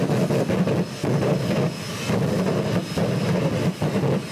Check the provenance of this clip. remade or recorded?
recorded